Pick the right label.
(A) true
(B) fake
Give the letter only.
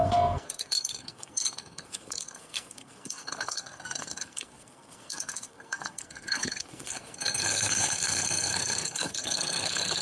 B